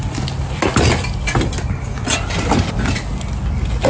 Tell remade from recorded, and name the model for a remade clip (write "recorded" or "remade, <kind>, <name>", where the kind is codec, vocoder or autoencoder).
recorded